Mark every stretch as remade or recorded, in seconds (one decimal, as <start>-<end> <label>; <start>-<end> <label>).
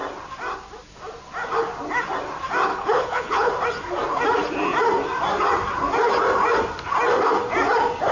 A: 0.0-2.7 recorded; 2.7-3.5 remade; 3.5-8.1 recorded